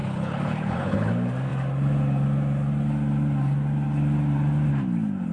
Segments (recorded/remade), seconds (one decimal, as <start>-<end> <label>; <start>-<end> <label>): 0.0-1.1 remade; 1.1-5.3 recorded

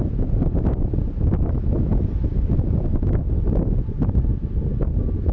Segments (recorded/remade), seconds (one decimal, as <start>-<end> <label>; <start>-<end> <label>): 0.0-5.3 recorded

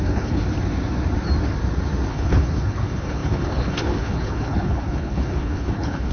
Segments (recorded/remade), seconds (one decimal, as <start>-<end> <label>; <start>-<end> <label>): 0.0-0.4 remade; 0.4-2.1 recorded; 2.1-6.1 remade

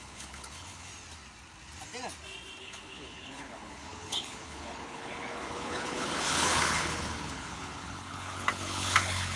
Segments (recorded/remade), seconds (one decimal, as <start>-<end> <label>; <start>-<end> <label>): 0.0-0.9 remade; 0.9-2.6 recorded; 2.6-9.4 remade

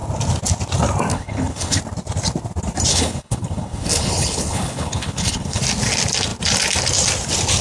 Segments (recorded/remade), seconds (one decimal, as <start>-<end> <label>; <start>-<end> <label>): 0.0-1.1 recorded; 1.1-1.8 remade; 1.8-2.9 recorded; 2.9-5.6 remade; 5.6-7.6 recorded

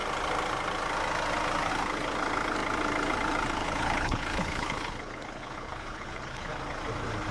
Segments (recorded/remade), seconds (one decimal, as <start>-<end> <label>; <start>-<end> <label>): 0.0-3.6 recorded; 3.6-6.5 remade; 6.5-7.3 recorded

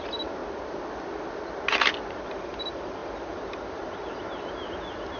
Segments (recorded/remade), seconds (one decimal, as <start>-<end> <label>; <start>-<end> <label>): 0.0-5.2 recorded

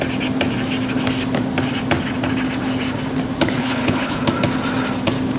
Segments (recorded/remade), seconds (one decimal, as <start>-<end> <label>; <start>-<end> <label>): 0.0-3.6 recorded; 3.6-4.2 remade; 4.2-5.4 recorded